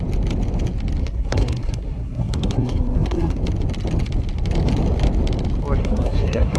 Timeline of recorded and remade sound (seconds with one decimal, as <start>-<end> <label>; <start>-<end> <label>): 0.0-1.0 recorded; 1.0-3.4 remade; 3.4-5.8 recorded; 5.8-6.6 remade